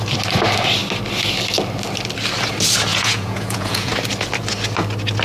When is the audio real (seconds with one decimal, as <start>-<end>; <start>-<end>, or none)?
0.0-2.9; 3.9-5.2

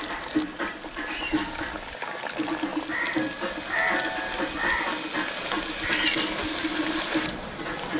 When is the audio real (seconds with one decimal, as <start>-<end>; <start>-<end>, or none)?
0.0-8.0

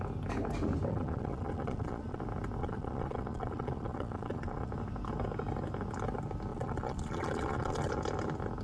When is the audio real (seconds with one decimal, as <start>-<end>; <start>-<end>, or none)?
0.0-0.9; 2.2-2.6; 4.7-6.5; 7.9-8.6

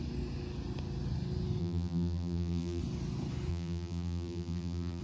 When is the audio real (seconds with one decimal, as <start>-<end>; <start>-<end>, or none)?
0.0-1.6; 2.8-3.5

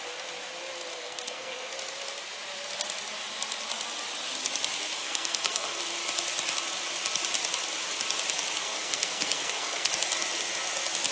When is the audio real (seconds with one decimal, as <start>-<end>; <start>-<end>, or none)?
0.0-0.9; 1.7-5.0; 5.8-8.6; 9.9-11.1

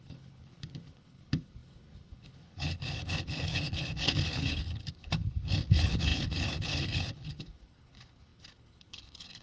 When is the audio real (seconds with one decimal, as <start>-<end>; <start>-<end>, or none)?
none